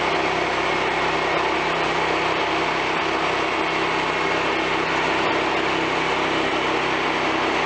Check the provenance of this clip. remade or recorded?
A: recorded